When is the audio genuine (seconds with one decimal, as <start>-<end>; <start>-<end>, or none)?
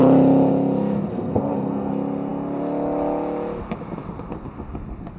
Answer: 0.0-1.1; 1.9-5.2